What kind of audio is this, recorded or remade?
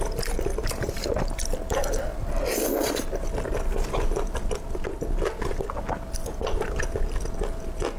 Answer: recorded